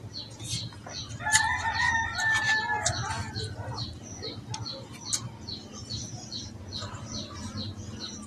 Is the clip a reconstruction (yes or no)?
no